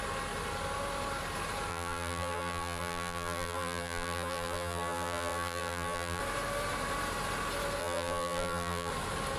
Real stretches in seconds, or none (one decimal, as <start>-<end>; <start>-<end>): 0.0-1.7; 6.2-7.8; 8.9-9.4